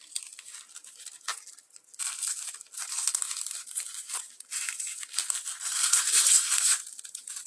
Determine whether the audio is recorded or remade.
recorded